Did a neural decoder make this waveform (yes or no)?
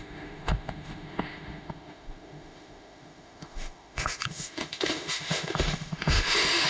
yes